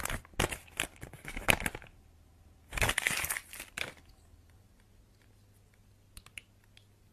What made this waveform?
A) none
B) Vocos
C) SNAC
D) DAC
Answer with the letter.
A